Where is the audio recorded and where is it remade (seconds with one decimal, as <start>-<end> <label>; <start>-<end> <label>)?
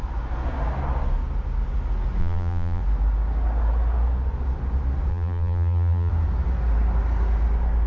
0.0-2.2 recorded; 2.2-2.8 remade; 2.8-5.1 recorded; 5.1-6.1 remade; 6.1-7.9 recorded